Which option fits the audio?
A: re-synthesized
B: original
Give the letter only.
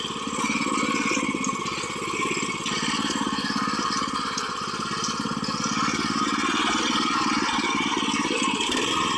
A